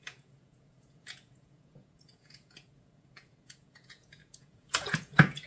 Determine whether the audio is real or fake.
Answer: fake